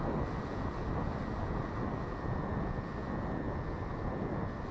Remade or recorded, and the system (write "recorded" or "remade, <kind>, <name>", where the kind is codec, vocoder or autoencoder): recorded